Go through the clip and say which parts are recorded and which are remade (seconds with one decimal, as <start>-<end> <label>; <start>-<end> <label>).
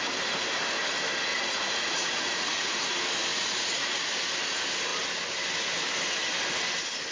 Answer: 0.0-1.3 recorded; 1.3-2.9 remade; 2.9-3.3 recorded; 3.3-4.1 remade; 4.1-7.1 recorded